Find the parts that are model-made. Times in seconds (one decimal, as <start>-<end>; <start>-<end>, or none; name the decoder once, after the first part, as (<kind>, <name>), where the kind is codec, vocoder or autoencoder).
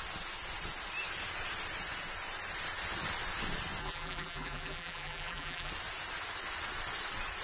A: 3.8-5.7 (vocoder, BigVGAN v2)